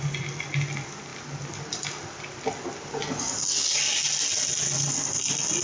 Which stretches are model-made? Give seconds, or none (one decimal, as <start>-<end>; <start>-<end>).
none